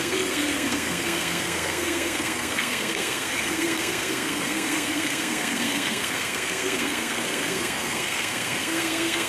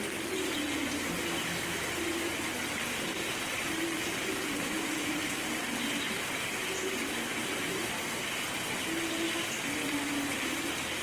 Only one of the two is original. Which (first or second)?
second